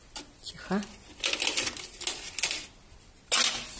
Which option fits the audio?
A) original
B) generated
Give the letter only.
A